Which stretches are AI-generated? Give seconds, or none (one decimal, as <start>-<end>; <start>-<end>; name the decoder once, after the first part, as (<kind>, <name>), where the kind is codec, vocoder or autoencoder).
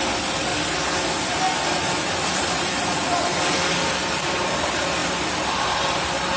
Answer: 0.0-0.5 (vocoder, BigVGAN v2); 2.0-3.1; 3.7-6.4